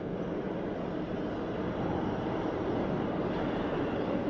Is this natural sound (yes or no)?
yes